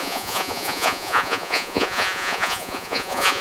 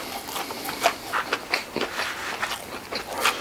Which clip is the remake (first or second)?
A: first